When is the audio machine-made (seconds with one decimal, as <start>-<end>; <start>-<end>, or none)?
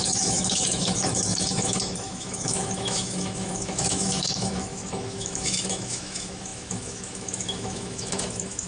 0.0-8.7